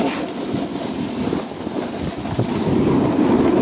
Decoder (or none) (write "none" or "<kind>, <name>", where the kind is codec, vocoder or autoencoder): none